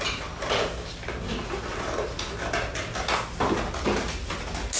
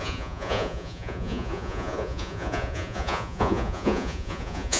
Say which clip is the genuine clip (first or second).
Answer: first